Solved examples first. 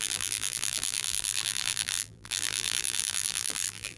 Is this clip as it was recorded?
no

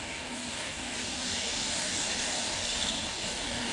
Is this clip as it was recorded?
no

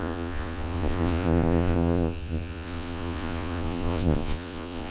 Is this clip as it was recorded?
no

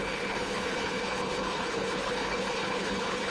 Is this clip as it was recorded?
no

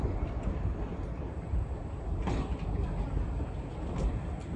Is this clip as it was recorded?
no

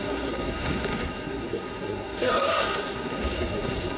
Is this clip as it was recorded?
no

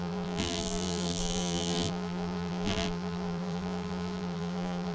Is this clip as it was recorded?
no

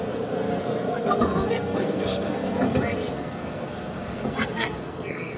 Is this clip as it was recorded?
no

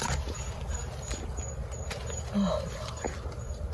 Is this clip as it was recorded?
yes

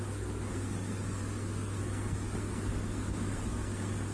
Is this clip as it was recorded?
no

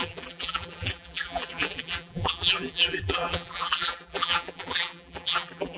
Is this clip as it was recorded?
no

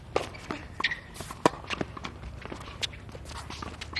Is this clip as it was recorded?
yes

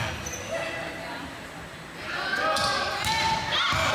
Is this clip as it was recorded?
yes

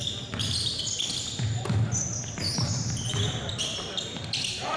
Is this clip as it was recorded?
yes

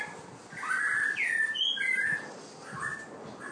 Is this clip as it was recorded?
yes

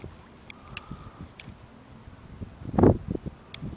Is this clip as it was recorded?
yes